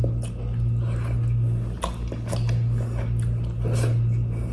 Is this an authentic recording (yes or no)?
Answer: yes